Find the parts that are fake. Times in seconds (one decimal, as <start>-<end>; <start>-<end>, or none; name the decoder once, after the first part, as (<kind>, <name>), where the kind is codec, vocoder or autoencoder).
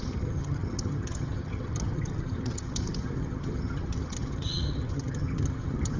0.0-6.0 (vocoder, HiFi-GAN)